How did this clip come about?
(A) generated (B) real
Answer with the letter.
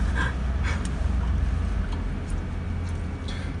B